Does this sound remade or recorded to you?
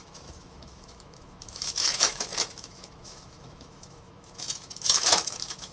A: remade